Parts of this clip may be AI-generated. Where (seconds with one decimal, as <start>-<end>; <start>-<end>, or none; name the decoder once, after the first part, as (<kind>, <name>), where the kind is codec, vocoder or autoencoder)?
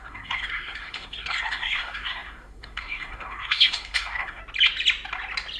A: 0.0-4.4 (codec, SNAC)